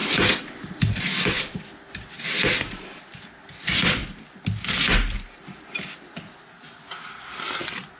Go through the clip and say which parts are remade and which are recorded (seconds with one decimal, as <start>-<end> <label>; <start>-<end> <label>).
0.0-8.0 recorded